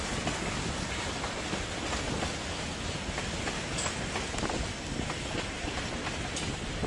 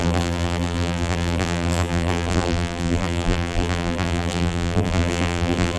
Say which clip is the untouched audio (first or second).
first